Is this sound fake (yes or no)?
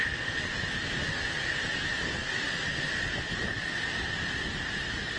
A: no